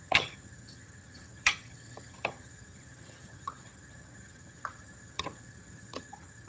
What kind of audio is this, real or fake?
fake